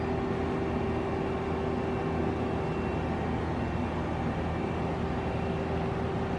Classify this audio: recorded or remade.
recorded